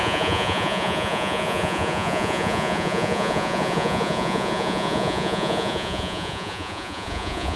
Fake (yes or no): yes